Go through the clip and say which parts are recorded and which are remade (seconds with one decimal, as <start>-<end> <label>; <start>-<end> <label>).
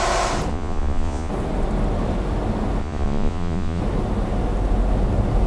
0.0-0.5 recorded; 0.5-1.3 remade; 1.3-2.8 recorded; 2.8-3.8 remade; 3.8-5.5 recorded